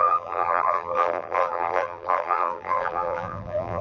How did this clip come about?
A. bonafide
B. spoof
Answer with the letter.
B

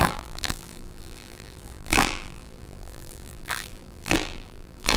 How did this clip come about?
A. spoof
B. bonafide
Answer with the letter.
A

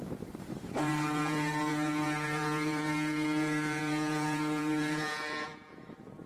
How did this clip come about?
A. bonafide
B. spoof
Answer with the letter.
B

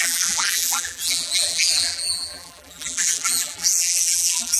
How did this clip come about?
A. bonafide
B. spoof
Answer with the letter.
B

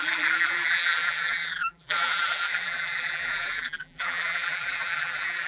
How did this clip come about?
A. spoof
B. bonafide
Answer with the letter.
A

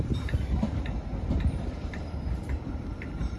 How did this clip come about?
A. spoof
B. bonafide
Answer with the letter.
A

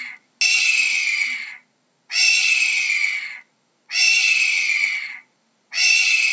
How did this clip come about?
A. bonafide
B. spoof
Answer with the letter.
A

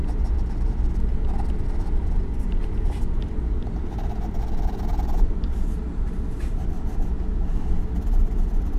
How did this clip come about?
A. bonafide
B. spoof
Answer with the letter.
A